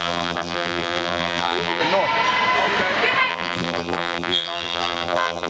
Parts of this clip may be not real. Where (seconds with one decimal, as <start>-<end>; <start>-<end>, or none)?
0.0-1.8; 3.3-5.5